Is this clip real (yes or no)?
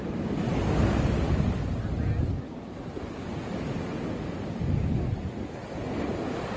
yes